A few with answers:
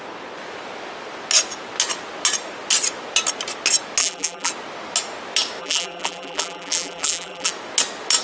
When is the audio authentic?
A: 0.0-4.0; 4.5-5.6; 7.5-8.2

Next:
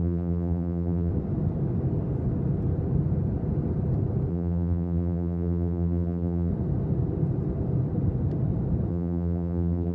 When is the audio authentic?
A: 1.1-4.3; 6.5-8.9

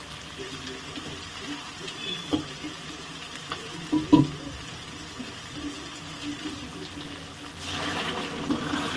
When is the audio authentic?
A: 0.0-9.0

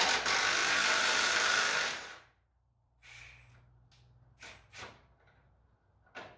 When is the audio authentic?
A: 0.0-0.6; 3.2-6.4

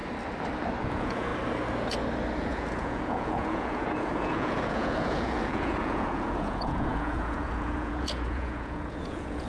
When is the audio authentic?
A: 0.0-0.8; 1.3-2.4

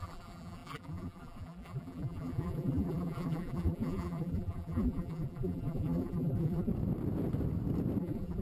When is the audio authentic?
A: 6.7-8.0